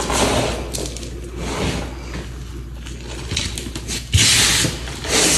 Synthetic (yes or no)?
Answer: no